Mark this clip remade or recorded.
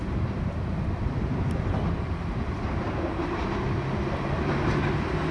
recorded